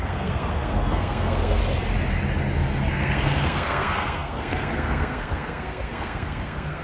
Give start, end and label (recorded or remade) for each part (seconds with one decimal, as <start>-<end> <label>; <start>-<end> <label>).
0.0-1.6 remade; 1.6-2.9 recorded; 2.9-6.8 remade